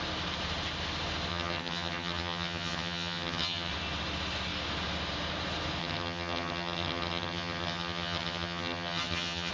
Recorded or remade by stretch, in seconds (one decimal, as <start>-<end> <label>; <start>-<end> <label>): 0.0-1.3 recorded; 1.3-3.7 remade; 3.7-5.8 recorded; 5.8-9.5 remade